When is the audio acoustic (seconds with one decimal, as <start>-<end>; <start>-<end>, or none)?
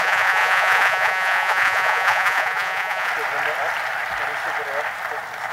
3.1-5.5